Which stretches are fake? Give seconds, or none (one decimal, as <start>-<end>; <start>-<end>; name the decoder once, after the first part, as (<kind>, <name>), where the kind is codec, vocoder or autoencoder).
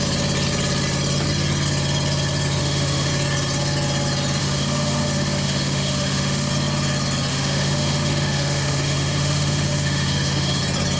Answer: 2.6-3.1 (autoencoder, DAC-VAE); 4.4-6.5; 7.3-10.6